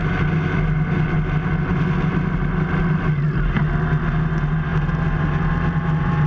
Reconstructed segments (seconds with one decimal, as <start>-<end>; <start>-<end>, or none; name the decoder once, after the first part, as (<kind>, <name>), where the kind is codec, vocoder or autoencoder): none